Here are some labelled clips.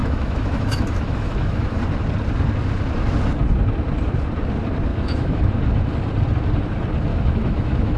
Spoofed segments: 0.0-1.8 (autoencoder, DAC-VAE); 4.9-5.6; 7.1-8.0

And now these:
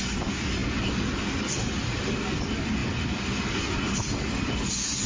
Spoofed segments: none

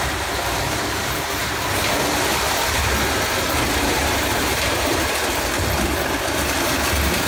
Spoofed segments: 0.0-1.4 (vocoder, BigVGAN v2); 2.3-2.8; 3.8-5.2; 6.2-7.3

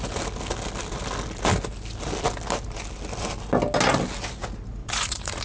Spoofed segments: 4.8-5.4 (vocoder, Vocos)